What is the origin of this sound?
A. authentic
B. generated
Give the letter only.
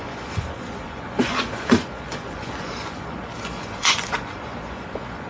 B